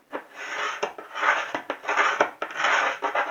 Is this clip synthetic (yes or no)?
no